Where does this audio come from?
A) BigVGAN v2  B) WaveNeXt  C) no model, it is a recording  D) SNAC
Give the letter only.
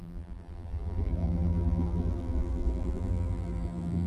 A